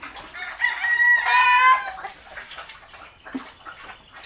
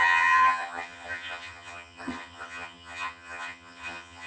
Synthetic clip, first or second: second